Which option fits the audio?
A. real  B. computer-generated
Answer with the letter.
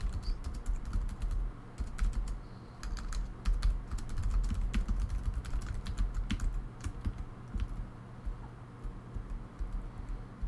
A